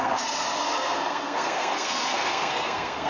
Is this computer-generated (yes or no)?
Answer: yes